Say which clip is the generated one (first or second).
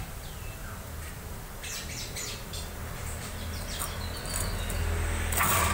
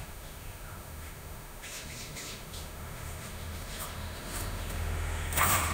second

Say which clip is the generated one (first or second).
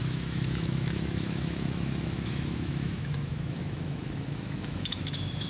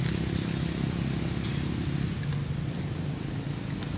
first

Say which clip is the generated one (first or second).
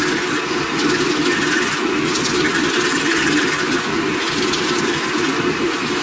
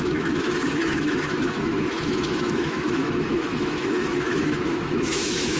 second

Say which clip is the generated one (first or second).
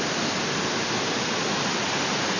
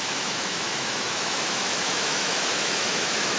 second